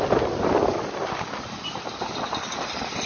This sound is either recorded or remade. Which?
recorded